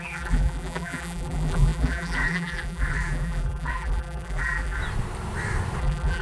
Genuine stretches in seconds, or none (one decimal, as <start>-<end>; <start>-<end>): 4.8-5.8